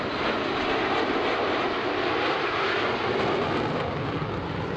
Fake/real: real